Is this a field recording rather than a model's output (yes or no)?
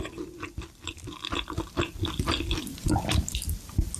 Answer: yes